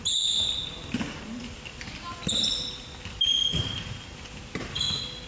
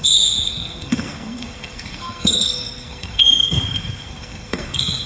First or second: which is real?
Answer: first